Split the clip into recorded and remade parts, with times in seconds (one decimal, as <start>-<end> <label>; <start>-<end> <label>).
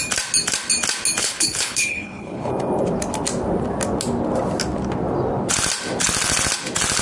0.0-1.2 recorded; 1.2-2.5 remade; 2.5-7.0 recorded